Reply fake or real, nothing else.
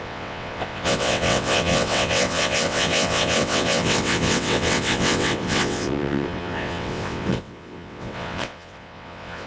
fake